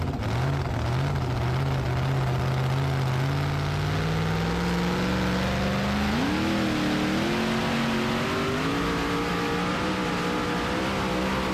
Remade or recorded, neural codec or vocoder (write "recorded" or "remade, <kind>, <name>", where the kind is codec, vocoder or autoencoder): recorded